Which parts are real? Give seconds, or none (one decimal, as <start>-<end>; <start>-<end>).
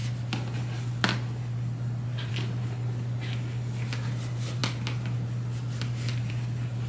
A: 0.0-6.9